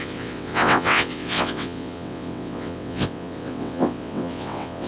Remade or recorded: remade